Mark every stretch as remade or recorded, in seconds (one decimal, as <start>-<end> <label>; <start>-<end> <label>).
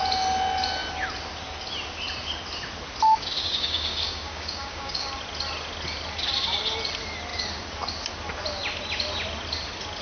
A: 0.0-3.4 recorded; 3.4-5.1 remade; 5.1-10.0 recorded